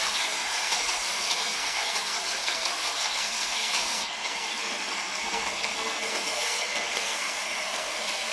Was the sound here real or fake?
fake